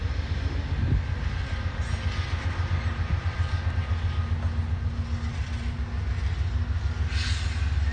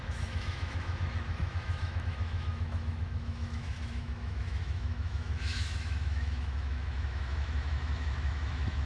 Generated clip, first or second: second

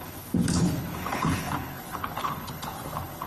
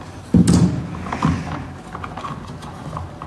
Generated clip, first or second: first